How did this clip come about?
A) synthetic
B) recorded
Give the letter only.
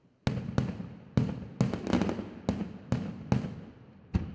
B